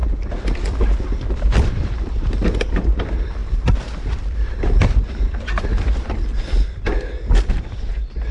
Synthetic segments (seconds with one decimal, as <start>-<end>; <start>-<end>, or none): 1.2-6.3; 7.5-8.3